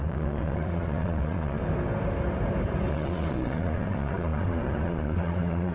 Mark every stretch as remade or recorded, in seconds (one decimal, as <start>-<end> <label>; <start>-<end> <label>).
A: 0.0-1.6 remade; 1.6-2.9 recorded; 2.9-5.7 remade